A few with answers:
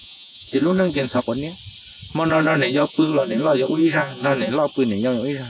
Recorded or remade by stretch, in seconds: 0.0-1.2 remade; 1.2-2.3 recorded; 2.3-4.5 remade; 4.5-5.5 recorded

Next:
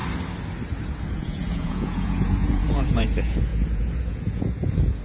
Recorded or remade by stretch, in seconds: 0.0-1.1 recorded; 1.1-5.0 remade